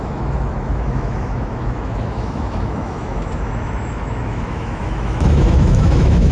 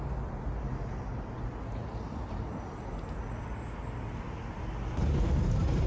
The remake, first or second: first